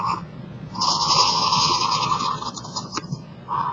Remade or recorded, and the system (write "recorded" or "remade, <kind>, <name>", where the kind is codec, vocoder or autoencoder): remade, vocoder, Vocos